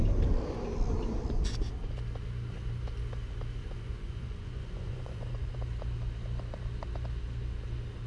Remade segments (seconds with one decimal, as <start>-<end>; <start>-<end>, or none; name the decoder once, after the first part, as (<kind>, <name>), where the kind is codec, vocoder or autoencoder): 3.6-5.6 (vocoder, Vocos)

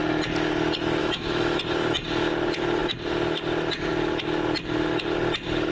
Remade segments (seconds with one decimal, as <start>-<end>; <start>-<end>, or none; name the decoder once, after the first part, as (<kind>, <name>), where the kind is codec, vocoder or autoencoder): 1.0-1.6 (autoencoder, DAC-VAE)

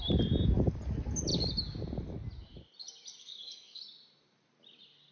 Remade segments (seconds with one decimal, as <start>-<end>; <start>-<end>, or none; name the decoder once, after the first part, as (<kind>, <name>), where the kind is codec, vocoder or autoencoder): 3.2-3.8 (codec, SNAC)

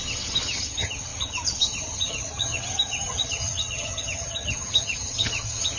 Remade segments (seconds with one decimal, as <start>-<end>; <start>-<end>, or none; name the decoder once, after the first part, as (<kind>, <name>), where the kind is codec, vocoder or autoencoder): 0.0-5.8 (vocoder, HiFi-GAN)

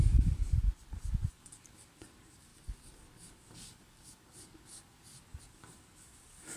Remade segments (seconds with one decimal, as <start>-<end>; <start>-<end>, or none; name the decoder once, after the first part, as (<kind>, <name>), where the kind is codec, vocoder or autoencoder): 0.0-0.5 (codec, DAC); 1.3-6.6